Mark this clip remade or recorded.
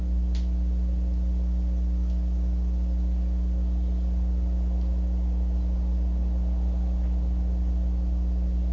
recorded